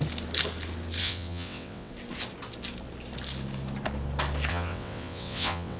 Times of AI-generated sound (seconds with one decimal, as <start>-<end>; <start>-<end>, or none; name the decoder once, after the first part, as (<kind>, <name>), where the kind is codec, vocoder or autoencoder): 1.0-1.9 (vocoder, WaveNeXt); 4.5-5.8